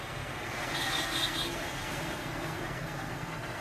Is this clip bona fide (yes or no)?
no